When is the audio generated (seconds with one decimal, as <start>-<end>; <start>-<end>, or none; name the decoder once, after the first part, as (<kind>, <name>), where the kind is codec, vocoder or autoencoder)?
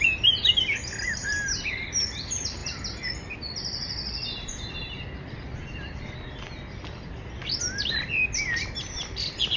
none